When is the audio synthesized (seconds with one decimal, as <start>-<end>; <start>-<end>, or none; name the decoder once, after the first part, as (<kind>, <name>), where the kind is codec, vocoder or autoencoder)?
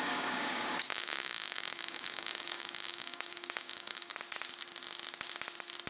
0.0-4.1 (codec, DAC)